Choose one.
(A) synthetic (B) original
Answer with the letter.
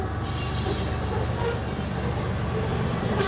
B